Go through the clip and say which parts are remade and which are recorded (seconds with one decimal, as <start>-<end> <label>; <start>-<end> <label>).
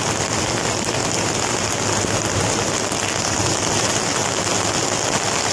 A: 0.0-5.5 recorded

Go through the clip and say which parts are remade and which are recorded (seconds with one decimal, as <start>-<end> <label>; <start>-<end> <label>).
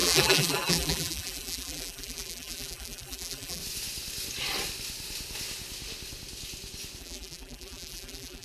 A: 0.0-3.6 remade; 3.6-7.0 recorded; 7.0-8.4 remade